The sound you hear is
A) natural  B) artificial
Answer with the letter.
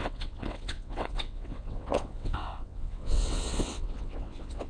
B